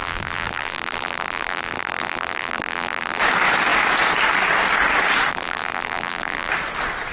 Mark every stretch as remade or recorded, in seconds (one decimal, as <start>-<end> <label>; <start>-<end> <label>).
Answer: 0.0-3.2 remade; 3.2-5.3 recorded; 5.3-6.5 remade; 6.5-7.1 recorded